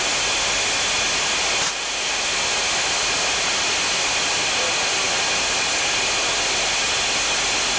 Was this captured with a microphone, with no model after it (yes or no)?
yes